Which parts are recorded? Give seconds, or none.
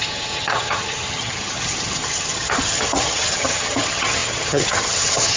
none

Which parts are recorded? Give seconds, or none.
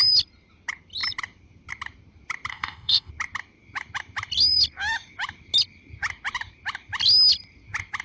0.0-2.5; 3.1-8.0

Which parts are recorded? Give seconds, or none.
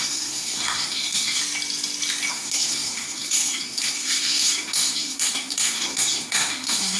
1.4-2.3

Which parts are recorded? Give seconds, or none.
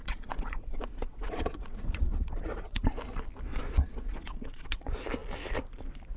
2.9-3.5; 4.8-6.2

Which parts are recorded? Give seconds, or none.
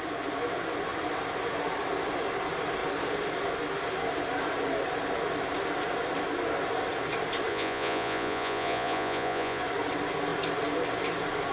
0.0-7.5; 9.6-11.5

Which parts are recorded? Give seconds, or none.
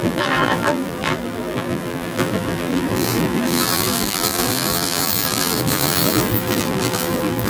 none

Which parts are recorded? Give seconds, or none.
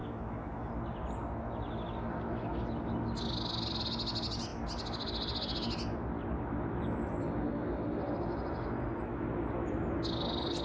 0.7-10.6